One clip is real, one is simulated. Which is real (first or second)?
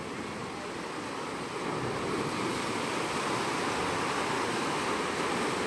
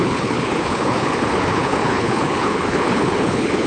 first